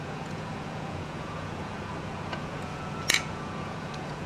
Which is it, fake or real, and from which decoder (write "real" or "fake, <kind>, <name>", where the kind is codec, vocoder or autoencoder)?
fake, vocoder, Vocos